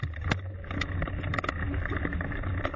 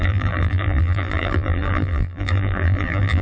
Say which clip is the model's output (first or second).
second